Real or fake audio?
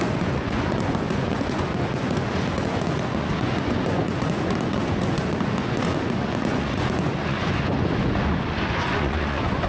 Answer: fake